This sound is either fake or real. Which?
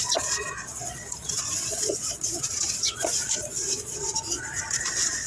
fake